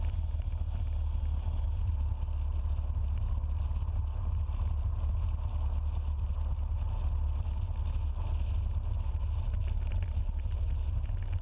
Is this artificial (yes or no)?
no